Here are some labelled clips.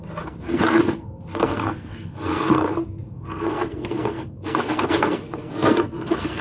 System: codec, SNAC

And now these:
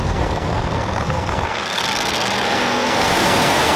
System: codec, SNAC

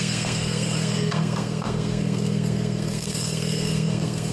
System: codec, SNAC